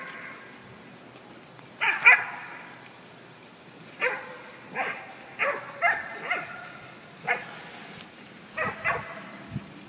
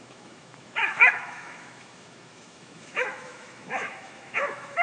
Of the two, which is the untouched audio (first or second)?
first